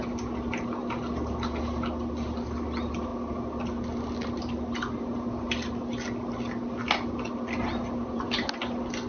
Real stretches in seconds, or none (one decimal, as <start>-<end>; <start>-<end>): 0.0-9.1

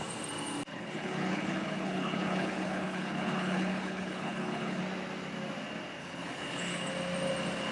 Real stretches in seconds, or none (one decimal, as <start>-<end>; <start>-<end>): 0.0-0.7; 4.8-6.0; 6.9-7.7

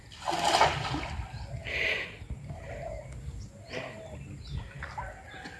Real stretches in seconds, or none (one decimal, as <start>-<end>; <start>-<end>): 0.0-5.6

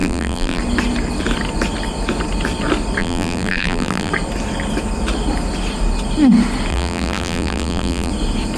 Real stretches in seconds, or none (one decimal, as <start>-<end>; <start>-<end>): 0.6-3.0; 4.1-6.7; 8.1-8.6

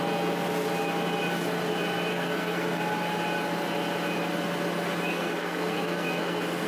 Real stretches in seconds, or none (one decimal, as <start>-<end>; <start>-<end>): 0.0-2.1; 2.8-5.1

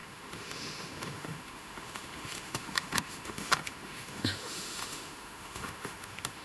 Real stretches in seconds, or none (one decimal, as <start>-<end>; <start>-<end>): none

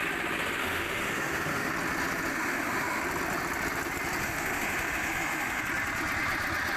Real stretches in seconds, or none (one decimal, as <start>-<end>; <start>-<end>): 0.0-0.6; 1.7-2.3; 3.0-4.2; 5.6-6.8

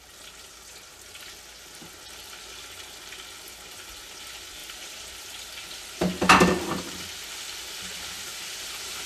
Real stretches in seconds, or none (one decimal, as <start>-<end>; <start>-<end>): 0.0-4.6; 6.0-8.3